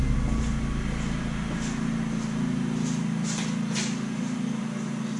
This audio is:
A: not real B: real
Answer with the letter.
B